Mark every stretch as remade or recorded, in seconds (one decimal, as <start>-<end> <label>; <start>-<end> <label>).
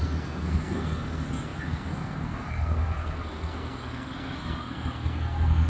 0.0-5.7 remade